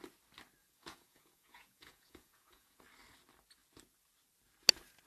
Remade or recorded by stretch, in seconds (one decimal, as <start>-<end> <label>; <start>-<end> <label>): 0.0-0.6 recorded; 0.6-2.8 remade; 2.8-5.1 recorded